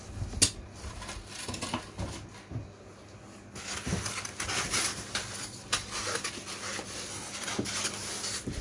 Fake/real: real